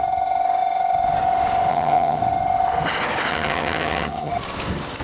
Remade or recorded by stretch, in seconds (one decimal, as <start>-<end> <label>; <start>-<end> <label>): 0.0-1.7 recorded; 1.7-2.2 remade; 2.2-3.3 recorded; 3.3-4.3 remade; 4.3-5.0 recorded